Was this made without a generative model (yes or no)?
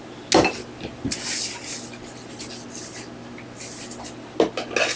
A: yes